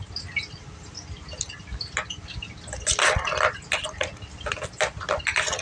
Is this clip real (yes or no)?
yes